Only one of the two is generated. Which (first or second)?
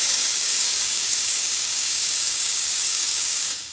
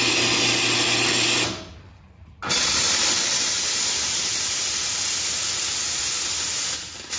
first